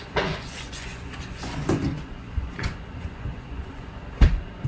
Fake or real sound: fake